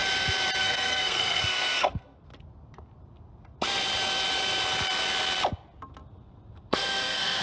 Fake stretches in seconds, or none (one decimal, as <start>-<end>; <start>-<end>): 0.6-2.3; 6.7-7.4